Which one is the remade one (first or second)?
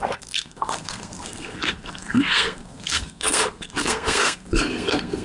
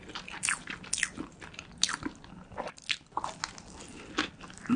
first